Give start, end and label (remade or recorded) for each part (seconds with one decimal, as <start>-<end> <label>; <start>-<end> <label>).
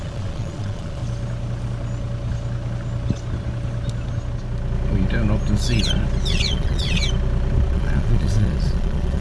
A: 0.0-1.0 remade; 1.0-6.3 recorded; 6.3-7.0 remade; 7.0-7.7 recorded; 7.7-9.2 remade